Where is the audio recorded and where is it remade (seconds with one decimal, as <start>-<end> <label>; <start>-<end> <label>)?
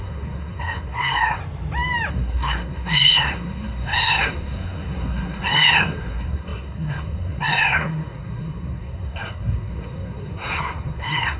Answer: 0.0-1.4 remade; 1.4-2.1 recorded; 2.1-11.4 remade